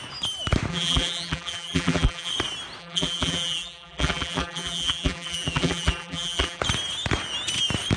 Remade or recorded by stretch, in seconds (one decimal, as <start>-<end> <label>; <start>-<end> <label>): 0.0-0.7 recorded; 0.7-2.3 remade; 2.3-2.8 recorded; 2.8-6.6 remade; 6.6-8.0 recorded

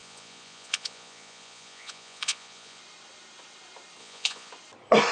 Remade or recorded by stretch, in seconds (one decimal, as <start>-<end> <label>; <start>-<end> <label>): 0.0-2.8 remade; 2.8-4.0 recorded; 4.0-4.5 remade; 4.5-5.1 recorded

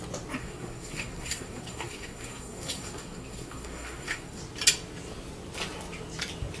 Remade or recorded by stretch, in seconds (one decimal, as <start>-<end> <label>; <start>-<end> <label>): 0.0-0.4 recorded; 0.4-4.4 remade; 4.4-6.6 recorded

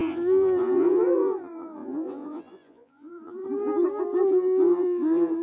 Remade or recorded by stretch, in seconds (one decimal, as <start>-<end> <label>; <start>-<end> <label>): 0.0-3.4 remade; 3.4-4.3 recorded; 4.3-5.4 remade